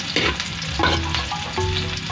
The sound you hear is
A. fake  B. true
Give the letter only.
B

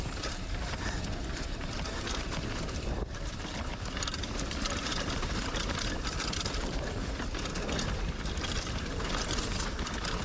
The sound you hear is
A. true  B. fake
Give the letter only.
B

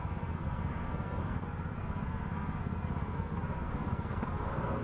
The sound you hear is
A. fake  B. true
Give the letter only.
A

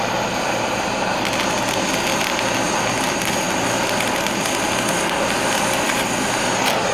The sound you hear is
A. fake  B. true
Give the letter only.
B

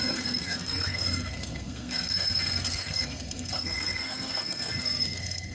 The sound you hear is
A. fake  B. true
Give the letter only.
A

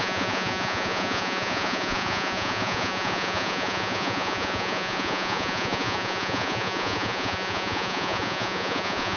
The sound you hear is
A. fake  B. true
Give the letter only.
A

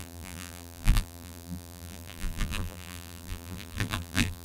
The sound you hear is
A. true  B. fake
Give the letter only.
B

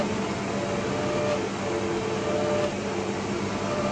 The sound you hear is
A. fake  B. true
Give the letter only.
B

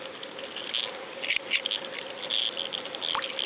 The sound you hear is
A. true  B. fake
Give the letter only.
A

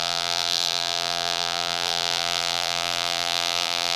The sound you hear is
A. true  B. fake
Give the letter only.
B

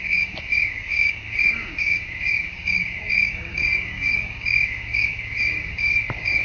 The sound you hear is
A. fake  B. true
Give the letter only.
A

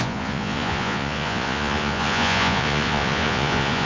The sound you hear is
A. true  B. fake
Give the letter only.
B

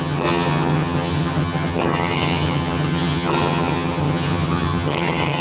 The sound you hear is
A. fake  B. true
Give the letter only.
A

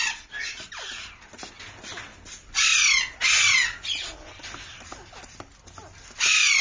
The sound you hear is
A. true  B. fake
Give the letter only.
A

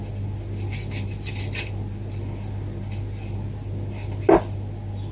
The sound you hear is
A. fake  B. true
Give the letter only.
B